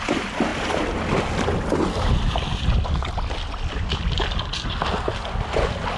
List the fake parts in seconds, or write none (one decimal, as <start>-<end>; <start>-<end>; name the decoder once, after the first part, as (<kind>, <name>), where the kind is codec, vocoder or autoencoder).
none